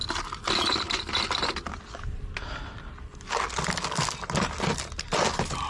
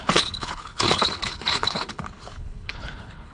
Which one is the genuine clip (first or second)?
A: first